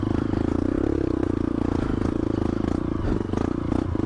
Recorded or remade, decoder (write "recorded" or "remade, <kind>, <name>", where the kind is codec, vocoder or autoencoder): recorded